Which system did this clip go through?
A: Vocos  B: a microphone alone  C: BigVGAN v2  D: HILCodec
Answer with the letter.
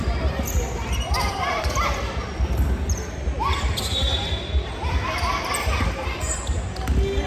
B